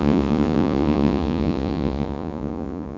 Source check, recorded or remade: remade